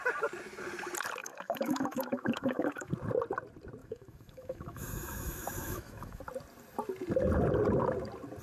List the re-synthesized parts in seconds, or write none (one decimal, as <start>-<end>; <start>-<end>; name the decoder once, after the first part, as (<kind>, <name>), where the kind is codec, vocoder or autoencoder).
1.2-2.9 (autoencoder, DAC-VAE); 3.8-6.2